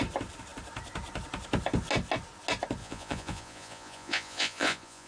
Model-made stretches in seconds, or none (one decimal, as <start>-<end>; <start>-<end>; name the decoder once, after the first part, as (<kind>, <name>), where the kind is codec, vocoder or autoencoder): 2.8-5.1 (vocoder, Vocos)